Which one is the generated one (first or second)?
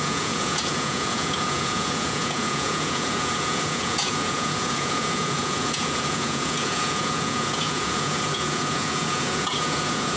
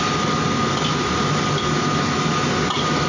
first